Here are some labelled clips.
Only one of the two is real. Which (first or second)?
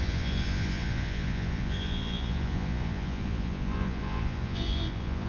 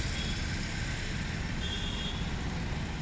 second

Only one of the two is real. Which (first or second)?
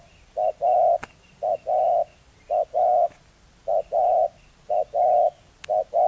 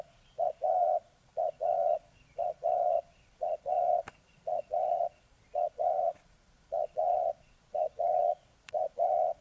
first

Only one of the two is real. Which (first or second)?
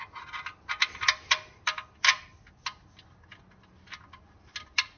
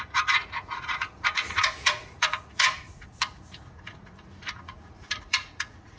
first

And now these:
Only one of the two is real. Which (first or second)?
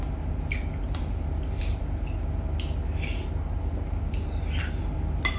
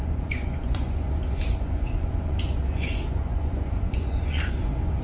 first